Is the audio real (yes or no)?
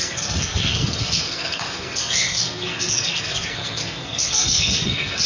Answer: no